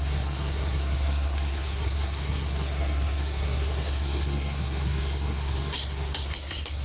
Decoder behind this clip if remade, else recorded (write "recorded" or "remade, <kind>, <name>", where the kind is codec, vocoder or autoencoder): remade, codec, SNAC